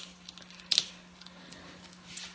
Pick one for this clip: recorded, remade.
recorded